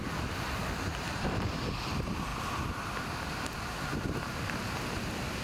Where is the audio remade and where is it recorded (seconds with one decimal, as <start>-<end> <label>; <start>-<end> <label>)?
0.0-0.9 recorded; 0.9-1.6 remade; 1.6-3.9 recorded; 3.9-4.7 remade; 4.7-5.4 recorded